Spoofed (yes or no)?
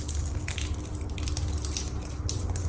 no